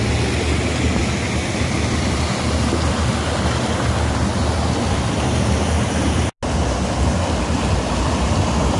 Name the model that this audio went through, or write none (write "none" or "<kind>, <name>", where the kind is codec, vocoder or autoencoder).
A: none